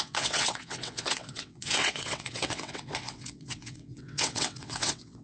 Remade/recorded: remade